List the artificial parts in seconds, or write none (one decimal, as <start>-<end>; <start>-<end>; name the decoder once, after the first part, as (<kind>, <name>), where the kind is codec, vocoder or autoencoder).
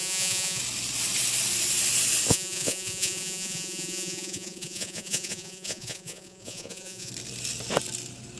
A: 0.0-0.6 (vocoder, Vocos); 2.3-7.1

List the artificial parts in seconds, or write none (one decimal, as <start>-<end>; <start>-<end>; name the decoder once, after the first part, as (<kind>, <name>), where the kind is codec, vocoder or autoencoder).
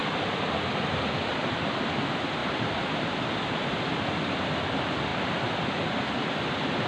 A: 0.0-1.3 (vocoder, BigVGAN v2); 5.1-6.9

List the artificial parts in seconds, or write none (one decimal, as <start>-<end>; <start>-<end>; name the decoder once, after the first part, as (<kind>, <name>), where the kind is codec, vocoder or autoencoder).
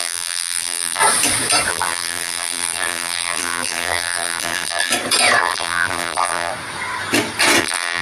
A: 0.0-1.0 (vocoder, BigVGAN v2); 1.7-4.9; 5.4-6.5; 7.6-8.0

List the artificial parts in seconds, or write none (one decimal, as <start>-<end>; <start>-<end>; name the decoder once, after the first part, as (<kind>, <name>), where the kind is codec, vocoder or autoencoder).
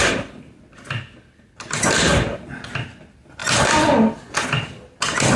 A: none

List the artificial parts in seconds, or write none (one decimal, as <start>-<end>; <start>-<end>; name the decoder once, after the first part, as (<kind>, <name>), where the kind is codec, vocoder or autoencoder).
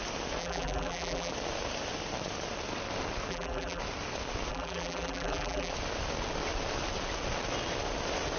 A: 0.4-1.3 (vocoder, BigVGAN v2); 3.3-3.8; 4.5-5.7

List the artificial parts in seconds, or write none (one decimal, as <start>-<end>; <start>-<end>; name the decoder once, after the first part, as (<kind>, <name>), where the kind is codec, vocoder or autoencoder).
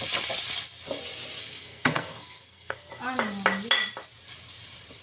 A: 1.4-2.9 (codec, SNAC)